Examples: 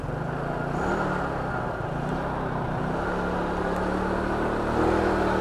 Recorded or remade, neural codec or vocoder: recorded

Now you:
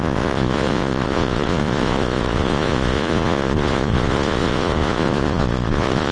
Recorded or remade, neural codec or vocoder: remade, vocoder, Vocos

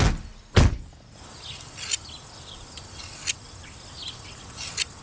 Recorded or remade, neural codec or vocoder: recorded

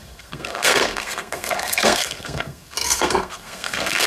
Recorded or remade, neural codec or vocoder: remade, codec, SNAC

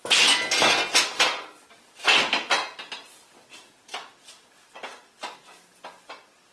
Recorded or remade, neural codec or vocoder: recorded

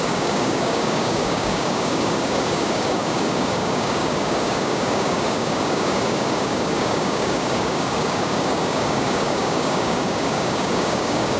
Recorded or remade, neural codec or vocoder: remade, codec, DAC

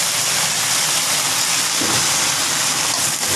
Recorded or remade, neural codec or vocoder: recorded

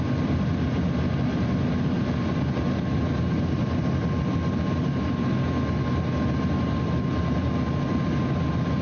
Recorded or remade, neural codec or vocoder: recorded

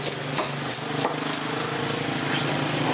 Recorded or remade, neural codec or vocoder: recorded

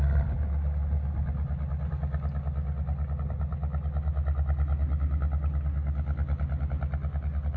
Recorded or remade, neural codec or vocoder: recorded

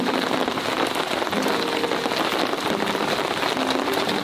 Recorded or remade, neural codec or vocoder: recorded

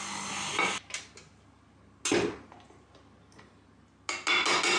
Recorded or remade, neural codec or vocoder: recorded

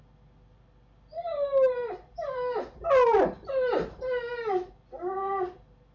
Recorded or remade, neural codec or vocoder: recorded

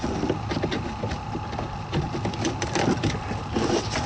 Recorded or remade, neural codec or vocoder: recorded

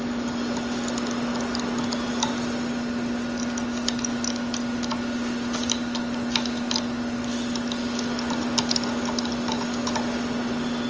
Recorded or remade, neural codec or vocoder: recorded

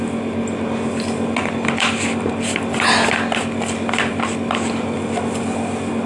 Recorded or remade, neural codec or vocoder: recorded